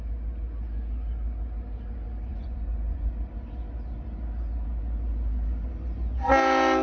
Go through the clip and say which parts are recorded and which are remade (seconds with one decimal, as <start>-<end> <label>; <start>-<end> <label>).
0.0-2.3 recorded; 2.3-3.1 remade; 3.1-6.8 recorded